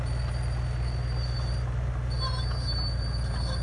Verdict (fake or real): real